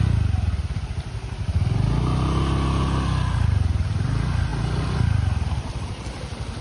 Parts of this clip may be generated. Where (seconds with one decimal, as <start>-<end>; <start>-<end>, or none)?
none